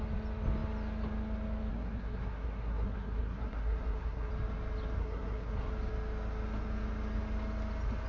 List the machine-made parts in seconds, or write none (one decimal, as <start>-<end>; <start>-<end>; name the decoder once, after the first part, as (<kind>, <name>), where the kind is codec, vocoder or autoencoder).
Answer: 1.7-4.3 (codec, SNAC); 5.0-5.7